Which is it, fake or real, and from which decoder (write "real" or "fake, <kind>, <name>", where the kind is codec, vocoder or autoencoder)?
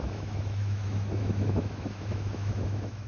fake, autoencoder, DAC-VAE